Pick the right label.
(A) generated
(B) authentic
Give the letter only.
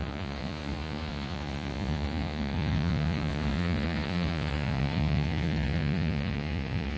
A